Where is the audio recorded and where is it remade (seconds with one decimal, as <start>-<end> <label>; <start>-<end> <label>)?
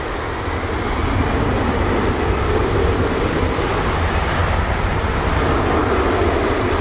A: 0.0-2.4 recorded; 2.4-3.7 remade; 3.7-4.4 recorded; 4.4-5.1 remade; 5.1-5.8 recorded; 5.8-6.8 remade